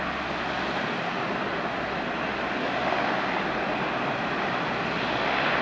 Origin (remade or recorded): recorded